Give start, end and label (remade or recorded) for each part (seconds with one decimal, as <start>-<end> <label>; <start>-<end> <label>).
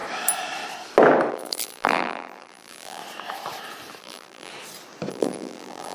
0.0-1.3 recorded; 1.3-3.0 remade; 3.0-4.0 recorded; 4.0-4.5 remade; 4.5-5.1 recorded; 5.1-5.9 remade